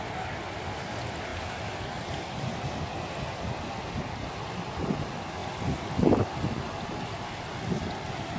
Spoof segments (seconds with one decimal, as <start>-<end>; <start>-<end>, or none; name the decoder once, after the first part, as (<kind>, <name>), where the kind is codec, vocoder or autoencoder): none